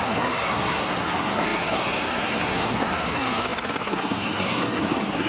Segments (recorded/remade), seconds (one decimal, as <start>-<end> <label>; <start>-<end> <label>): 0.0-5.3 remade